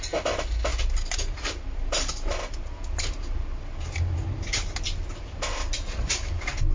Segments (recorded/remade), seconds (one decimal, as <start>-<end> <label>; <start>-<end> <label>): 0.0-6.7 recorded